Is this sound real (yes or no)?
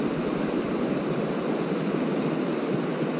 no